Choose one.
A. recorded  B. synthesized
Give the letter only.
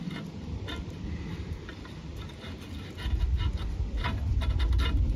A